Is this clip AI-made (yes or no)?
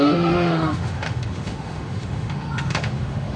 yes